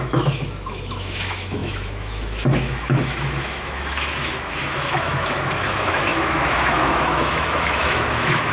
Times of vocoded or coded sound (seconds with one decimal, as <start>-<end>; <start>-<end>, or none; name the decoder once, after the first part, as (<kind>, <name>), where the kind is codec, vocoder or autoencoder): 0.0-8.5 (autoencoder, DAC-VAE)